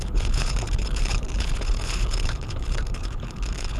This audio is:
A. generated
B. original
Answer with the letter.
A